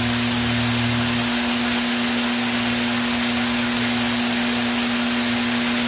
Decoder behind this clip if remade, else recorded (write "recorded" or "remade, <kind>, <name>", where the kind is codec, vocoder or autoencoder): recorded